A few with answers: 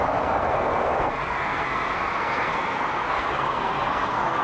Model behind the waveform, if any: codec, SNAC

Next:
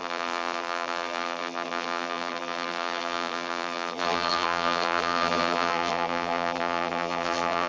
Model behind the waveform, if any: vocoder, BigVGAN v2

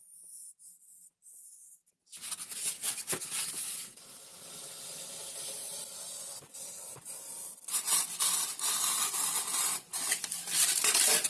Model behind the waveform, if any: none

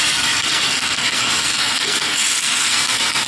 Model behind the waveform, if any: codec, SNAC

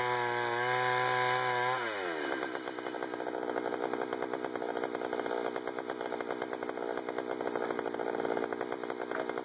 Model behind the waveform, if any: none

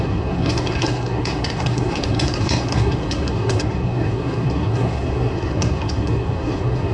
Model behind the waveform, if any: codec, SNAC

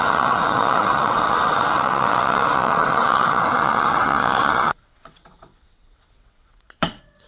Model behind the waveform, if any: vocoder, WaveNeXt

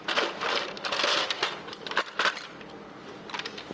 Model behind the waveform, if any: none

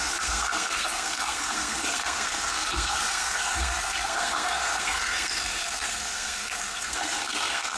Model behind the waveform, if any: codec, SNAC